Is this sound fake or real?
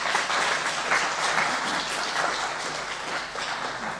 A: real